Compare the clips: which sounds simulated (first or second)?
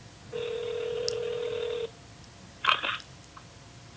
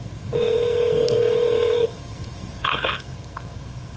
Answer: second